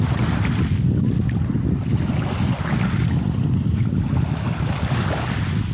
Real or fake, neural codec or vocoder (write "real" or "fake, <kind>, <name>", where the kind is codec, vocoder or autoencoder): real